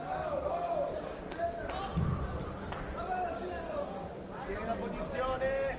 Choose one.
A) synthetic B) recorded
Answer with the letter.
B